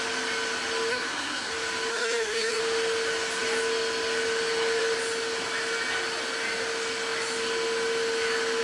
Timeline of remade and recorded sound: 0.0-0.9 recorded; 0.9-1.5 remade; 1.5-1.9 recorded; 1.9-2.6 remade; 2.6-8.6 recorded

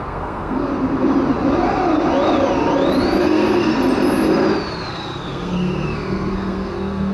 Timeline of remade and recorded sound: 0.0-0.7 remade; 0.7-3.2 recorded; 3.2-3.7 remade; 3.7-4.9 recorded; 4.9-7.1 remade